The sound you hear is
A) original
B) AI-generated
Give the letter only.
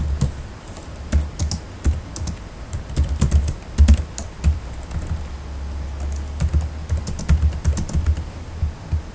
A